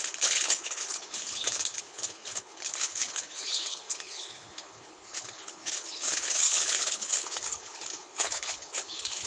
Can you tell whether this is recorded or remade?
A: remade